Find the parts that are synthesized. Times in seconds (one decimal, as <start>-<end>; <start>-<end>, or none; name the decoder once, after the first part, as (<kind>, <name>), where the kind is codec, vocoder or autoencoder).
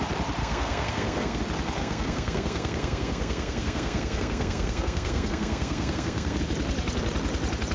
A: 0.4-1.4 (codec, SNAC); 1.8-6.4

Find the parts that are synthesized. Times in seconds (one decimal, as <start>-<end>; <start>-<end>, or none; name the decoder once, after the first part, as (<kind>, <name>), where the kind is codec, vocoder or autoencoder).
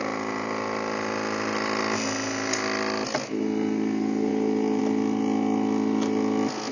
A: none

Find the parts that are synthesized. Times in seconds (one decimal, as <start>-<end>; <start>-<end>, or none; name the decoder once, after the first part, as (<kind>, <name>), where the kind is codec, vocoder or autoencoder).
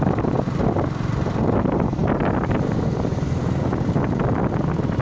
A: none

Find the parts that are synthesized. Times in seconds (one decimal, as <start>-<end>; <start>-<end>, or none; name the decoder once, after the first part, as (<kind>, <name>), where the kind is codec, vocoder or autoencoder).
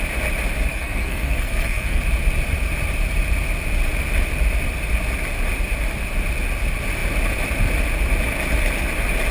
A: 0.7-2.0 (codec, SNAC)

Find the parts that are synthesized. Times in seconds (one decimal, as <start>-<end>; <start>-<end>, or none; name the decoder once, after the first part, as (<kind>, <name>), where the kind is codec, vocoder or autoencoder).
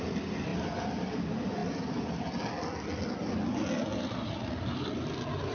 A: none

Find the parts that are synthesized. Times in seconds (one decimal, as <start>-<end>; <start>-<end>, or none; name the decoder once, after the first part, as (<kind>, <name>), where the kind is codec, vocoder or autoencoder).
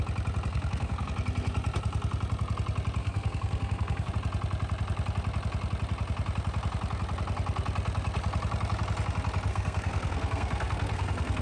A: 0.5-1.1 (codec, SNAC); 3.0-4.1; 9.5-11.4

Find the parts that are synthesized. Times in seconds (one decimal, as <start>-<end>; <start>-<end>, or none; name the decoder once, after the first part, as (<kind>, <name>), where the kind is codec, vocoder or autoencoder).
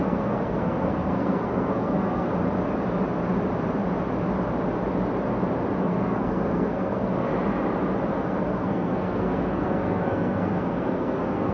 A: 0.0-2.3 (codec, SNAC); 5.8-7.3; 8.1-11.5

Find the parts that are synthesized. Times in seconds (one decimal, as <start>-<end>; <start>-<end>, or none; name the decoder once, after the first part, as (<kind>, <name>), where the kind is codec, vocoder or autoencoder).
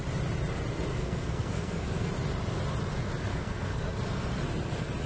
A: 0.9-2.1 (codec, SNAC); 3.3-3.9